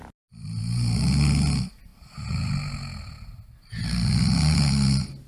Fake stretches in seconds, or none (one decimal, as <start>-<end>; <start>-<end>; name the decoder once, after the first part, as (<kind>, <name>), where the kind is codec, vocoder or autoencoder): none